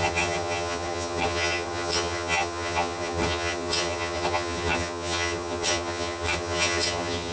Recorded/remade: remade